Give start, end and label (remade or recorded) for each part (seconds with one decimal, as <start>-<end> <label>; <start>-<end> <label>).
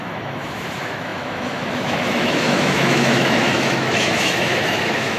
0.0-5.2 remade